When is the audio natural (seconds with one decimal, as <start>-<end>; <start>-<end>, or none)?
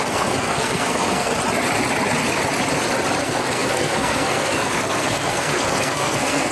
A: 1.3-3.2